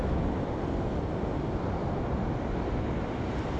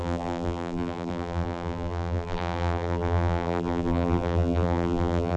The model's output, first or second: second